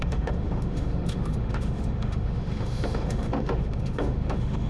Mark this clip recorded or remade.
remade